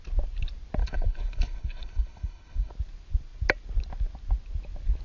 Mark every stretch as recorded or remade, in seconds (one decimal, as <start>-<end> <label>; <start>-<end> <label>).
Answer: 0.0-0.8 recorded; 0.8-2.7 remade; 2.7-5.0 recorded